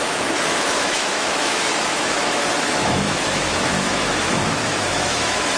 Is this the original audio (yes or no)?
no